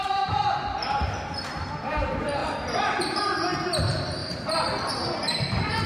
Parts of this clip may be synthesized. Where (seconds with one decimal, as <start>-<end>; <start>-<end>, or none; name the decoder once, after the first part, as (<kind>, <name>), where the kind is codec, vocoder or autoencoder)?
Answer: none